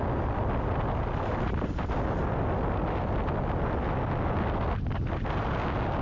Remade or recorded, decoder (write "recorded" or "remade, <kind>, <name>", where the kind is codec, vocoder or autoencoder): recorded